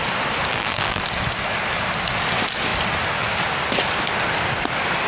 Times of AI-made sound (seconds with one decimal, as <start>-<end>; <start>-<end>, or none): 0.5-1.0

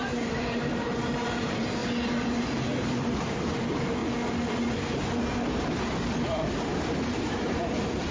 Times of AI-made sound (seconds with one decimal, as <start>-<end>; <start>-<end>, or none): 0.0-1.8; 2.4-4.0; 6.3-6.7; 7.2-8.1

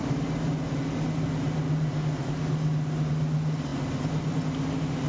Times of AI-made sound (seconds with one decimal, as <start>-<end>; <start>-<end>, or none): 3.7-4.4

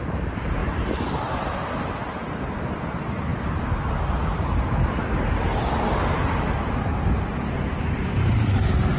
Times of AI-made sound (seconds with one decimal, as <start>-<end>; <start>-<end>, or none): 0.6-1.7

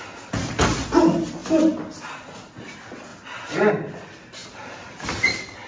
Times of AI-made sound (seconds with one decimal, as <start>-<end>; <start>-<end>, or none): 1.4-2.1; 4.4-5.2